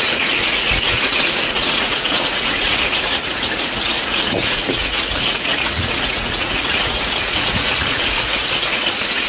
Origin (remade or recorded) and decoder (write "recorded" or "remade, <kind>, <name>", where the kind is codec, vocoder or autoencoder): remade, vocoder, Vocos